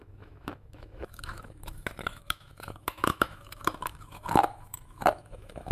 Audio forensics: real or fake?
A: fake